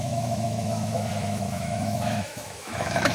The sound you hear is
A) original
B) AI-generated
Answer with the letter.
B